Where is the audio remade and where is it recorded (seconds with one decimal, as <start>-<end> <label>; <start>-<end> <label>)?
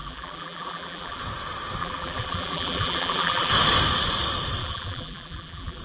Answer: 0.0-1.2 remade; 1.2-1.8 recorded; 1.8-3.5 remade; 3.5-4.6 recorded; 4.6-5.8 remade